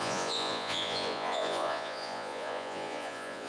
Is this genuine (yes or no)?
no